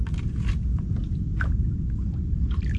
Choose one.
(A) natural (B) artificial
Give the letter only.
A